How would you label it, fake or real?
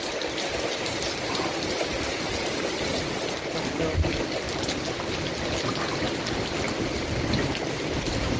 real